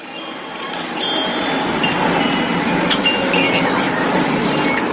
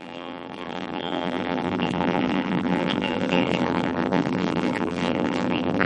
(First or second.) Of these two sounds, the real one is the first